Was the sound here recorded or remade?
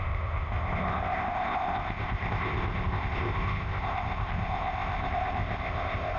remade